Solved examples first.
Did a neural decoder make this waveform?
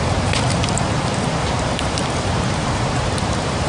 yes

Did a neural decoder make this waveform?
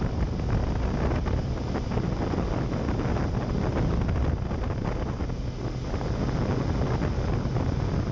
no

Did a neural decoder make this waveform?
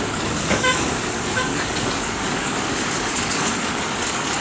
yes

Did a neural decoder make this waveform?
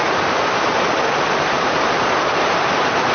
yes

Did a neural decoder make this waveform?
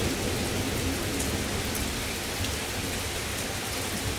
no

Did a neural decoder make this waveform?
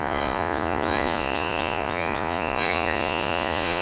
yes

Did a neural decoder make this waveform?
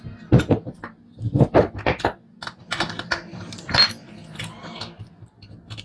no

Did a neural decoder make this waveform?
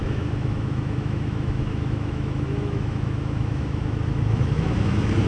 yes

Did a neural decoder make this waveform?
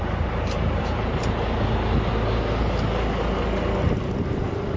no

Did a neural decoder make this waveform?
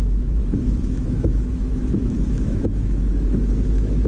yes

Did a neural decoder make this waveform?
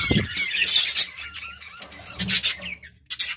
no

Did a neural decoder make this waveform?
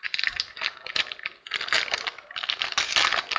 no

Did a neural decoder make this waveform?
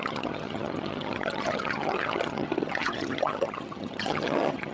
yes